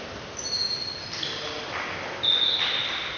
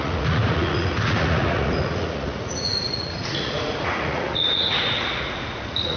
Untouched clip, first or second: first